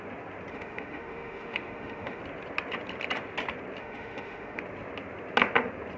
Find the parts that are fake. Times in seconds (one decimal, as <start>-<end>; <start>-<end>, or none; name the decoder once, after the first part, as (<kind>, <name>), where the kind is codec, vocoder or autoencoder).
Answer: 0.5-2.2 (autoencoder, DAC-VAE); 3.8-4.6